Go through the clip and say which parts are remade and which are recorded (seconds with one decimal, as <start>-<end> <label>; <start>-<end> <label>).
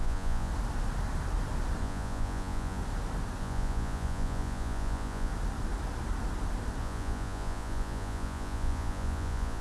0.0-0.5 remade; 0.5-1.8 recorded; 1.8-2.8 remade; 2.8-3.4 recorded; 3.4-5.3 remade; 5.3-6.8 recorded; 6.8-9.6 remade